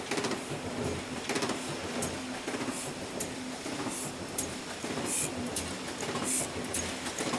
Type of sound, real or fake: real